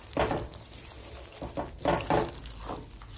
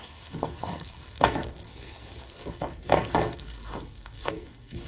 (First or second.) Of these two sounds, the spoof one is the second